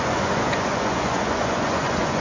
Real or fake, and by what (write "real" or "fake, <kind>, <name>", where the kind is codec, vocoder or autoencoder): fake, vocoder, Vocos